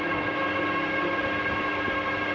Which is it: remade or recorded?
recorded